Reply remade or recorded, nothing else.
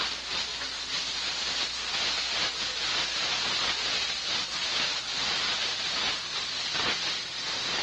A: recorded